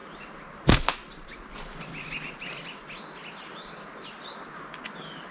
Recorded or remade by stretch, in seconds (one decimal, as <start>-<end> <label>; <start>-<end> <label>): 0.0-5.3 recorded